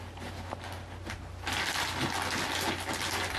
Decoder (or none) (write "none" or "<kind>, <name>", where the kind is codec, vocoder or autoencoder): none